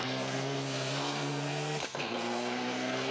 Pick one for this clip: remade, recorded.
remade